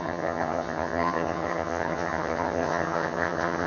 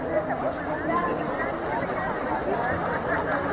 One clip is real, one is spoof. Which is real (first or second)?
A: second